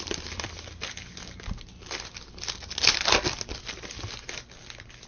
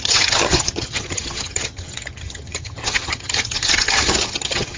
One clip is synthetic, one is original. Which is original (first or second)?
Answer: first